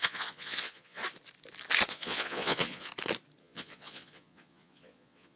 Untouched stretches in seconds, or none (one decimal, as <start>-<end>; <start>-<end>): 1.0-1.9; 2.9-3.4

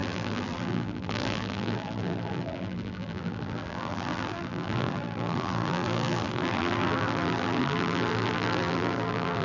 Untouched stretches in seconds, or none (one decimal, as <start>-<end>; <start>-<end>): none

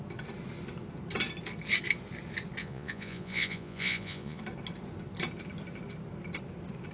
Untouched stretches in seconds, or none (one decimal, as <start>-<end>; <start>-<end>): 0.0-2.6; 4.4-6.9

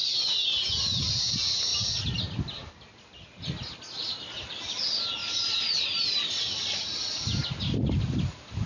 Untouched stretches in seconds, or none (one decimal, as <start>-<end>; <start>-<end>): 0.0-1.7; 2.2-8.7

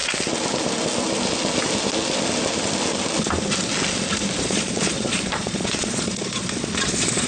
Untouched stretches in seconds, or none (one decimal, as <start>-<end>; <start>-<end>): 0.0-4.4